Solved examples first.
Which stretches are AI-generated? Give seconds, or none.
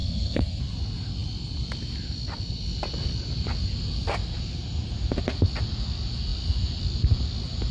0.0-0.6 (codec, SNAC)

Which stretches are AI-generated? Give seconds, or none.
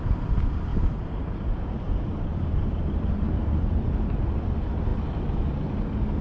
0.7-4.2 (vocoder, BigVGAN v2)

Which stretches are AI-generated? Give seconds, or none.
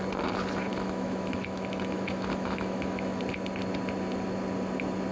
0.7-3.2 (autoencoder, DAC-VAE)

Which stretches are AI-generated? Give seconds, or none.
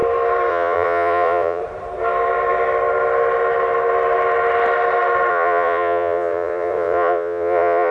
0.5-1.6 (vocoder, Vocos); 5.3-7.9